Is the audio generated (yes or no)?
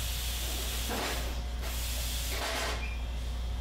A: no